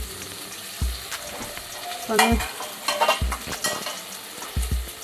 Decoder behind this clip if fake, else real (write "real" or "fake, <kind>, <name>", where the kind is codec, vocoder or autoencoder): fake, vocoder, BigVGAN v2